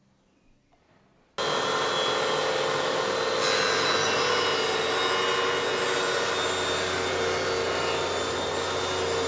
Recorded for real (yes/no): yes